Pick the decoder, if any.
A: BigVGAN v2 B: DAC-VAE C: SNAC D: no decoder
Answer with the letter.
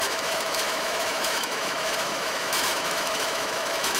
B